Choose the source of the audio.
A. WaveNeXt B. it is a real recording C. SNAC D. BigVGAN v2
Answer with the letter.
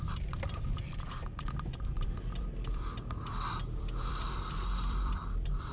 D